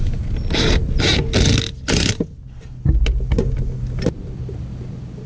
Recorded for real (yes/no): yes